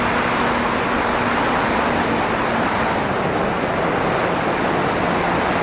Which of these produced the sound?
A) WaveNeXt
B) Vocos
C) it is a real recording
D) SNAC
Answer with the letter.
C